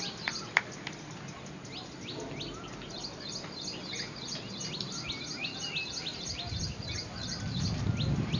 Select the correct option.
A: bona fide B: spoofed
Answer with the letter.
A